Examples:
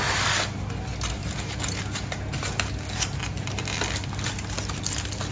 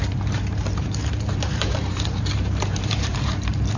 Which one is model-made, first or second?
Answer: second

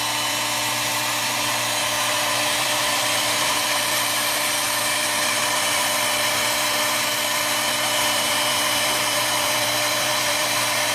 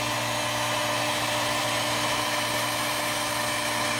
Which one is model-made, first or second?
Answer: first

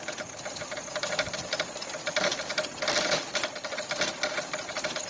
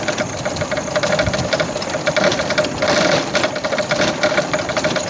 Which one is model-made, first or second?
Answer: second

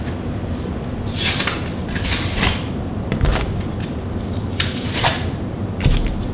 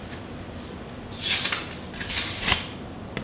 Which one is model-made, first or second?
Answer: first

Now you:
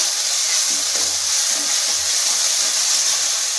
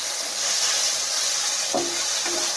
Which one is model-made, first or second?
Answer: second